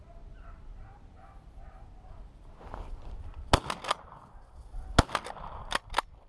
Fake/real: real